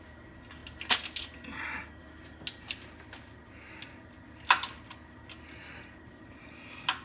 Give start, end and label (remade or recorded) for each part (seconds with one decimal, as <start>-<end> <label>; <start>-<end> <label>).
0.0-7.0 recorded